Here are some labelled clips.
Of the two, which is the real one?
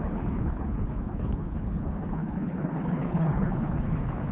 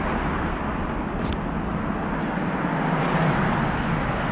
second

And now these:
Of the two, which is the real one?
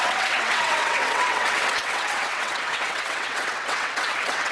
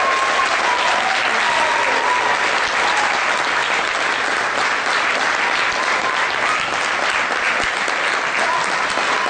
second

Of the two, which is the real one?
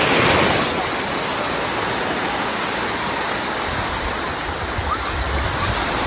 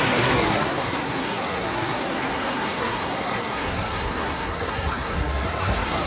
first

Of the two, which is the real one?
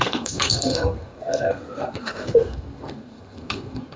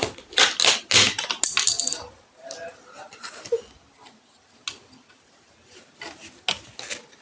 second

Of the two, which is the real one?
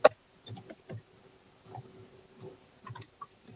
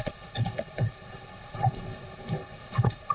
first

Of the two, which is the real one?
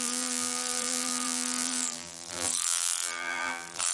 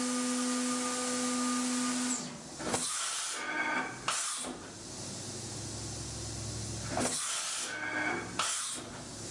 second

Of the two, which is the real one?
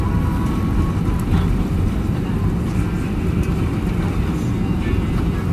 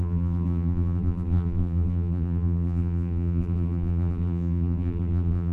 first